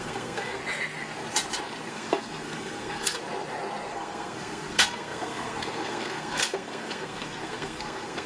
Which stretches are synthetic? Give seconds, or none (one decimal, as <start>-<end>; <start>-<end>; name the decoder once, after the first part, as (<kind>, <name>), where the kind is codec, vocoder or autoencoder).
0.0-0.6 (codec, SNAC); 1.9-3.2; 3.9-8.3